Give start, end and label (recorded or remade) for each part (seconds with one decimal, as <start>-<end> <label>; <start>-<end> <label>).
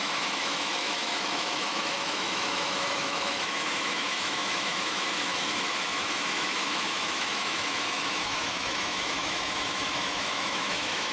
0.0-11.1 remade